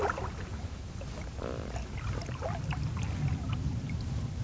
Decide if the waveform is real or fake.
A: real